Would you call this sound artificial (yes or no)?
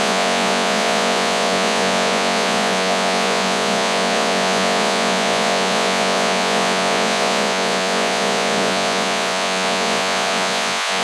yes